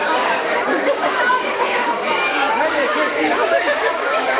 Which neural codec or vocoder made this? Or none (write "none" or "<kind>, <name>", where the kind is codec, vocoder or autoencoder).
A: codec, DAC